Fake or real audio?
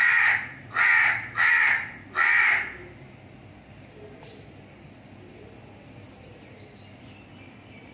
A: real